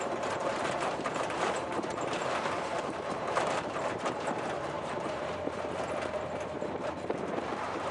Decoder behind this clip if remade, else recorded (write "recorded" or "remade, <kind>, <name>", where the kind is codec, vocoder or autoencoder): remade, vocoder, BigVGAN v2